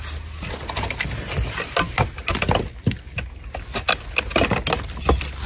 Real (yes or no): yes